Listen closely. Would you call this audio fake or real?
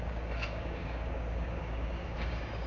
fake